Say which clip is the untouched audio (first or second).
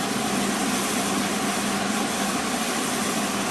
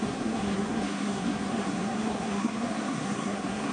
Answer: first